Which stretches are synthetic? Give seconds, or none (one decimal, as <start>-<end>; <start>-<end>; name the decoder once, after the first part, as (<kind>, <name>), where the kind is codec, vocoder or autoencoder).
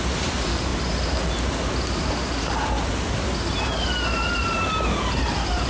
none